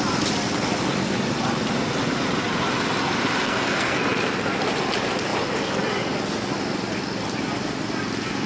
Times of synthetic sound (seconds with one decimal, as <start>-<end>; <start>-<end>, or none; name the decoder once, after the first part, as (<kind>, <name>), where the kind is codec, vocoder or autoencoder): 3.4-4.0 (codec, SNAC)